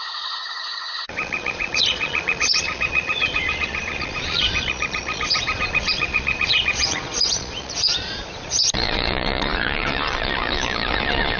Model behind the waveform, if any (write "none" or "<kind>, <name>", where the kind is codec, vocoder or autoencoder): vocoder, Vocos